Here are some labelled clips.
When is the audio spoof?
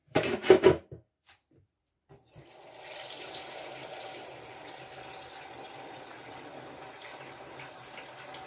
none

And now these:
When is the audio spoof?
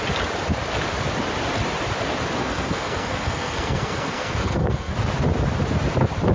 2.4-4.9 (codec, SNAC)